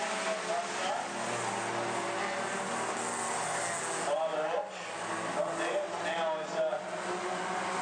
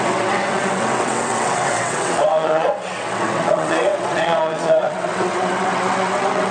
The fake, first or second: second